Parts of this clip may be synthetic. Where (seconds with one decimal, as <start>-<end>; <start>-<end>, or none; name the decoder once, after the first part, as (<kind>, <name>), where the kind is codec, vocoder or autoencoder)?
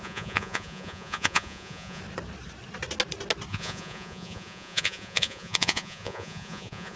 0.0-2.0 (vocoder, Vocos); 3.5-7.0